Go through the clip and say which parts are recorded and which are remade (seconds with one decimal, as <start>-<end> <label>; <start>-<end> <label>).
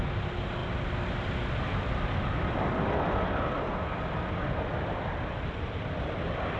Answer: 0.0-6.6 recorded